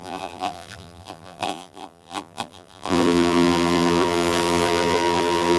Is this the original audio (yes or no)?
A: no